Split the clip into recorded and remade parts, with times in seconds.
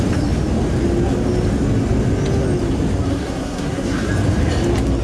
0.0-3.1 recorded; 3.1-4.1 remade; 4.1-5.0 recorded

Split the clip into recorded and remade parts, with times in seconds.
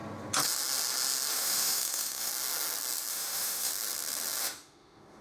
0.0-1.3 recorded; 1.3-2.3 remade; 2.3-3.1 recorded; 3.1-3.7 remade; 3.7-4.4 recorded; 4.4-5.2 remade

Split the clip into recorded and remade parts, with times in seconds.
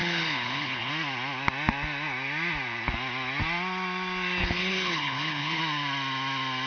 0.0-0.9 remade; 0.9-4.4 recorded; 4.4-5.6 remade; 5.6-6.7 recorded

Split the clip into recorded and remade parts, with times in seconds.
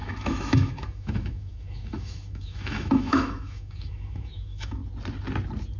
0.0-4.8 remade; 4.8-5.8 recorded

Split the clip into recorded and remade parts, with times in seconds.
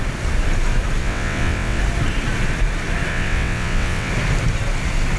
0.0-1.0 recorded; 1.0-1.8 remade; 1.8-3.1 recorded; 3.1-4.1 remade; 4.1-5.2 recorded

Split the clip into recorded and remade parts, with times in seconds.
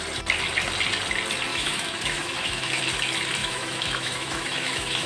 0.0-1.5 recorded; 1.5-2.8 remade; 2.8-3.4 recorded; 3.4-5.1 remade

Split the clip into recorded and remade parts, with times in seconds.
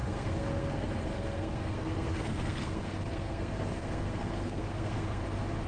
0.0-5.2 remade; 5.2-5.7 recorded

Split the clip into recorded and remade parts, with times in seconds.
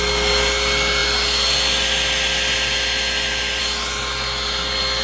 0.0-5.0 recorded